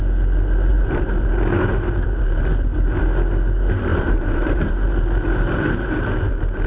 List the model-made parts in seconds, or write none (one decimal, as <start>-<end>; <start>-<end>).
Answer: 0.7-3.0; 3.9-6.3